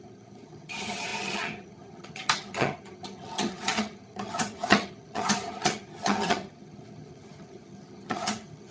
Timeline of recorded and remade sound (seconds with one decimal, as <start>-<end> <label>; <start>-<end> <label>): 0.0-8.7 remade